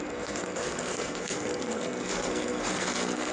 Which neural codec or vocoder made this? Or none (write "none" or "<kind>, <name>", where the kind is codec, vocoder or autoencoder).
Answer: codec, SNAC